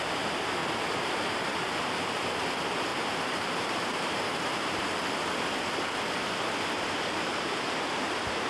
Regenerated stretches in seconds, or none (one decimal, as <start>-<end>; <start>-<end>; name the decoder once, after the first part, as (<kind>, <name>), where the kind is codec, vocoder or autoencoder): 0.6-1.7 (vocoder, BigVGAN v2); 2.9-5.0; 7.3-8.5